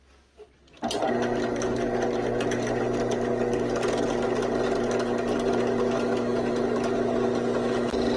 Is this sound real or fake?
real